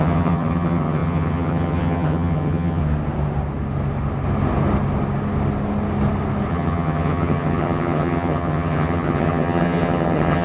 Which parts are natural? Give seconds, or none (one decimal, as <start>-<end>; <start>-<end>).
2.8-6.5